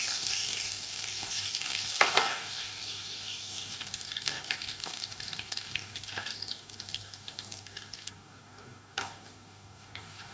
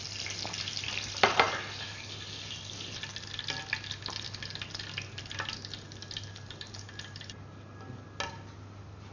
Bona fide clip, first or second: second